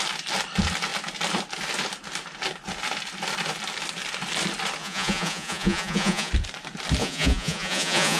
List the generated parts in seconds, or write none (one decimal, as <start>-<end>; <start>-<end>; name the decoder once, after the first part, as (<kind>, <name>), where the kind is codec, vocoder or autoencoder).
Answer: 4.8-6.3 (vocoder, Vocos); 7.0-8.2